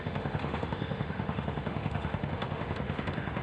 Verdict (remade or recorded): remade